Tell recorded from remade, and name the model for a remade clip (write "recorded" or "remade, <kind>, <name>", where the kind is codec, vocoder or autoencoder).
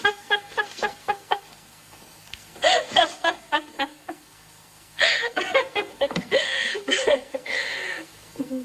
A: remade, codec, SNAC